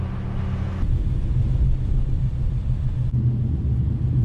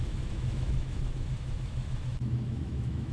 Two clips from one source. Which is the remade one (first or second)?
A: second